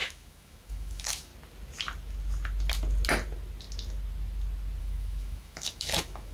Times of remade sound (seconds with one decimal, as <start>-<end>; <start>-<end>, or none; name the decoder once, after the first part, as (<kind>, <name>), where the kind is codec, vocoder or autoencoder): 0.0-1.3 (autoencoder, DAC-VAE); 4.8-6.3